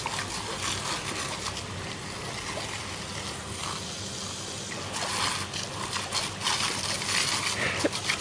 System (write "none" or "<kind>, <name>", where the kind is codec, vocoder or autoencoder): none